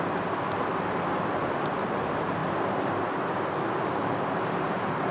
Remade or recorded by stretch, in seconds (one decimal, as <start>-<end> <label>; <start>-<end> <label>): 0.0-2.4 remade; 2.4-3.7 recorded; 3.7-5.1 remade